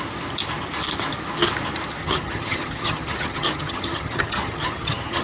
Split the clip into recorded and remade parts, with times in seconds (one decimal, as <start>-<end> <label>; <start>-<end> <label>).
0.0-2.0 recorded; 2.0-5.2 remade

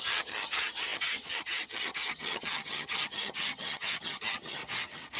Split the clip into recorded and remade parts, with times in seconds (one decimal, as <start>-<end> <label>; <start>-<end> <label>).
0.0-4.6 remade; 4.6-5.2 recorded